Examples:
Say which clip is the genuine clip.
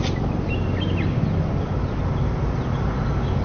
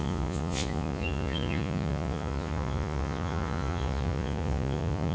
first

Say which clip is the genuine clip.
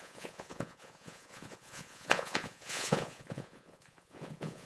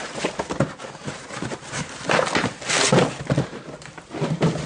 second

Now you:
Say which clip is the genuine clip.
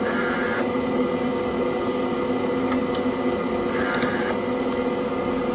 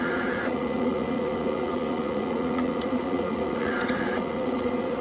first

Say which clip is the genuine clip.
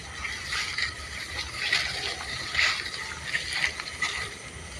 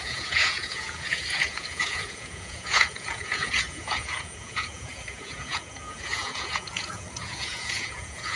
first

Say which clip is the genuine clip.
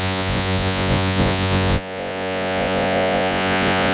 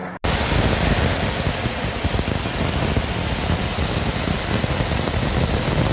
second